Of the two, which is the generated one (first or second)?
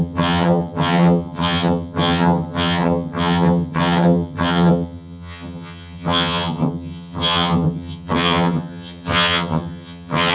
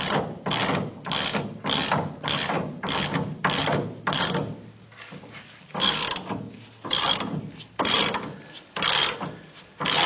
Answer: first